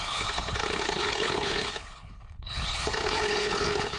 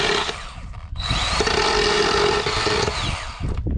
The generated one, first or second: first